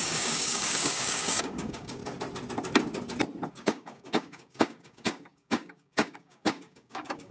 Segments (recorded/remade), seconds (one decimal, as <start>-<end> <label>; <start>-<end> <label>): 0.0-2.0 remade; 2.0-3.5 recorded; 3.5-7.3 remade

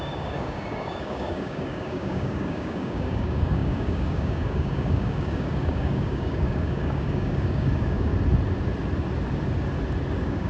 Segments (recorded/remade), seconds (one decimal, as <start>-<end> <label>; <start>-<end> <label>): 0.0-8.1 remade; 8.1-10.1 recorded; 10.1-10.5 remade

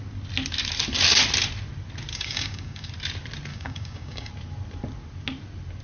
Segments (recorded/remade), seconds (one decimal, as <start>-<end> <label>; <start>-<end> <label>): 0.0-2.1 recorded; 2.1-2.9 remade; 2.9-3.5 recorded; 3.5-4.3 remade; 4.3-5.8 recorded

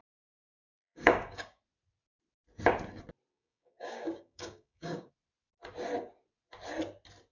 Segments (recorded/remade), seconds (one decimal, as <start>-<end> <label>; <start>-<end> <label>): 0.0-0.7 recorded; 0.7-1.6 remade; 1.6-3.3 recorded; 3.3-5.1 remade; 5.1-7.3 recorded

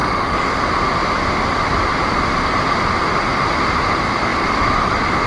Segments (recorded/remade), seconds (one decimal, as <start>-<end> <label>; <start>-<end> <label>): 0.0-0.6 remade; 0.6-5.3 recorded

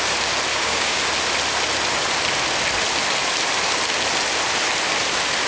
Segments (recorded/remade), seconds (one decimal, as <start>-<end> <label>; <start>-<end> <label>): 0.0-0.5 recorded; 0.5-1.0 remade; 1.0-5.5 recorded

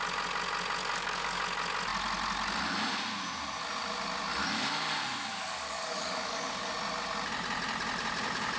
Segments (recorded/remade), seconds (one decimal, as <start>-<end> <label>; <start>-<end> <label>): 0.0-0.8 recorded; 0.8-1.4 remade; 1.4-5.3 recorded; 5.3-6.7 remade; 6.7-8.6 recorded

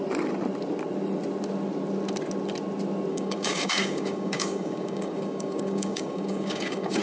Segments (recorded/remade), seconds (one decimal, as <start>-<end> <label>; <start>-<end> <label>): 0.0-3.1 recorded; 3.1-7.0 remade